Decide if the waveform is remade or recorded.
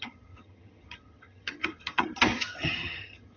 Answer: remade